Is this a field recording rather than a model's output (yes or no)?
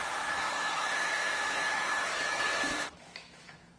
no